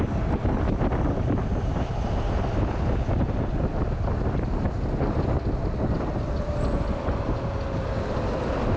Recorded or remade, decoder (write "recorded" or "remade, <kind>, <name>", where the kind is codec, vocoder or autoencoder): recorded